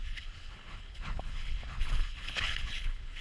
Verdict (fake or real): fake